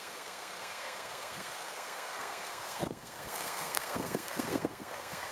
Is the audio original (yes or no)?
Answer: no